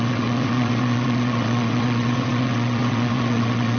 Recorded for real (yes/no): no